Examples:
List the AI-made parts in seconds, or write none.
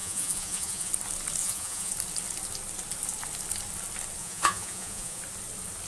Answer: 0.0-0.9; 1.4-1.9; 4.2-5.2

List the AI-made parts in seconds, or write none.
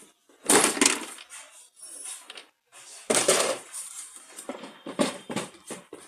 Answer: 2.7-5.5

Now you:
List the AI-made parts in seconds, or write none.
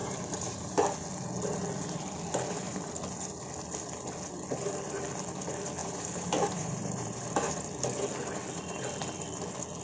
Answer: 0.0-0.7; 5.8-7.5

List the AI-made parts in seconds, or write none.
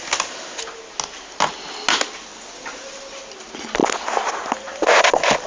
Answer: none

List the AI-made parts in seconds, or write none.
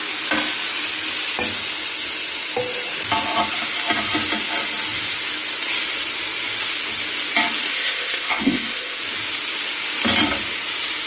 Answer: 7.7-9.0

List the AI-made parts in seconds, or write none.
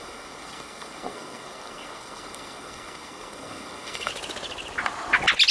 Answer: 0.0-4.1